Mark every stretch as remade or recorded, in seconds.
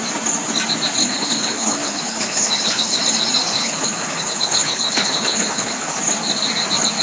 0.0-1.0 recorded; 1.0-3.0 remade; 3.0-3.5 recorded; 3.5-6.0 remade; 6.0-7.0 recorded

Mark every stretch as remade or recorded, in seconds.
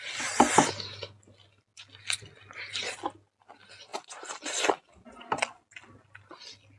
0.0-3.9 recorded; 3.9-6.3 remade; 6.3-6.8 recorded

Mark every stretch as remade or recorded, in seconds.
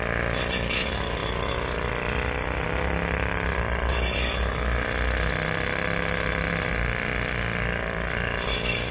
0.0-8.9 recorded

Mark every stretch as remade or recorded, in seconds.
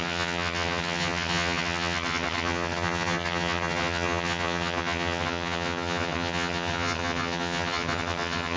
0.0-8.6 remade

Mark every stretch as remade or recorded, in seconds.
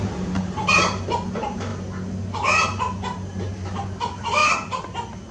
0.0-1.7 remade; 1.7-3.5 recorded; 3.5-4.4 remade; 4.4-5.3 recorded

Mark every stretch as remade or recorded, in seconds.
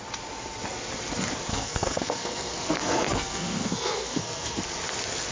0.0-1.5 recorded; 1.5-4.6 remade; 4.6-5.3 recorded